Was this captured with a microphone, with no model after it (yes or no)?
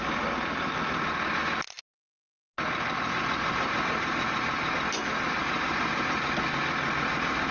yes